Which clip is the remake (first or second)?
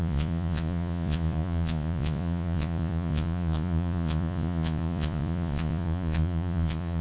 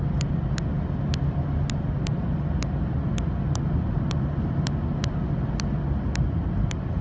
first